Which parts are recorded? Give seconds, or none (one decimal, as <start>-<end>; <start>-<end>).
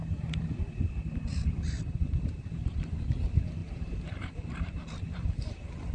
0.6-1.3; 2.6-3.6; 5.4-5.9